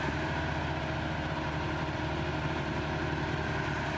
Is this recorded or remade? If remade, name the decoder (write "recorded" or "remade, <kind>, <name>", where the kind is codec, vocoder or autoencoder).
remade, vocoder, BigVGAN v2